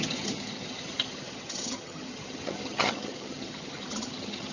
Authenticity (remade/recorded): remade